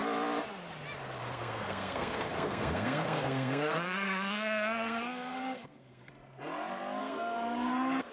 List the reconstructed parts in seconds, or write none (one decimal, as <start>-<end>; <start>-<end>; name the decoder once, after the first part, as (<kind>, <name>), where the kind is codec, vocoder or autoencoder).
1.2-6.1 (codec, SNAC); 7.0-8.1